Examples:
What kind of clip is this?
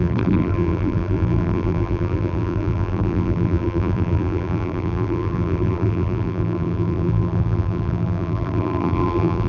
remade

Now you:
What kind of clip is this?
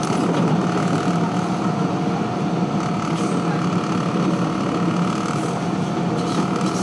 recorded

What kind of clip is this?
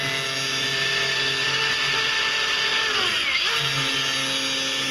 recorded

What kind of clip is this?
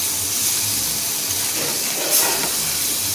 recorded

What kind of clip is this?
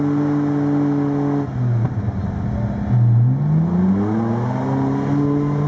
recorded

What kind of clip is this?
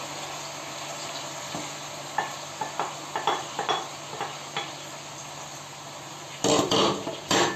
recorded